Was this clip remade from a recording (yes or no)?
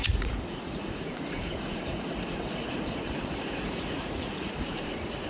yes